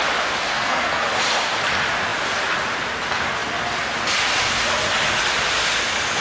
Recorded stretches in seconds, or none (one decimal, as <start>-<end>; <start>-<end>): 0.0-0.5; 1.1-6.2